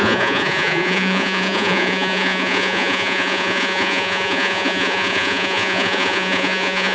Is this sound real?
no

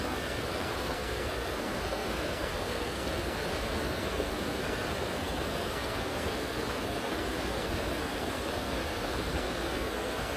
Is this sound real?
no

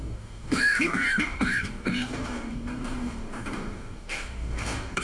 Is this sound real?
no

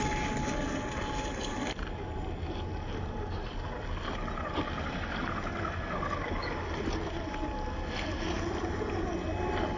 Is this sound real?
yes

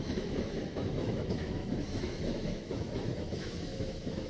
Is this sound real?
no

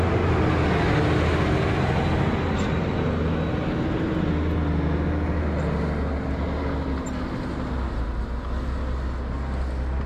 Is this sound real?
yes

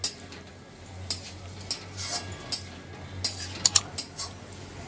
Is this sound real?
yes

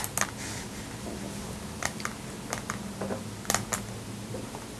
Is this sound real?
yes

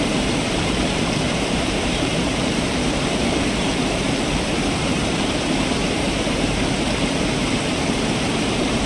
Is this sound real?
no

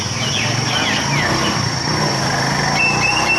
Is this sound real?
yes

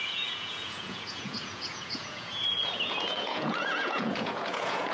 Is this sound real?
no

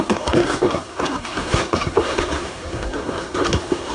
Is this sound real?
no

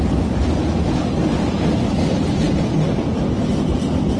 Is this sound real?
yes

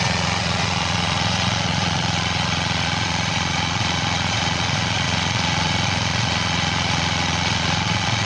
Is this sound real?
no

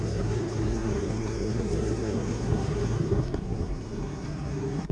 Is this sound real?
no